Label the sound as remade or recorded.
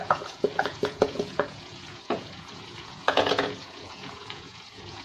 remade